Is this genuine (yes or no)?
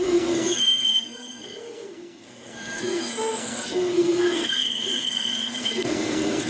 no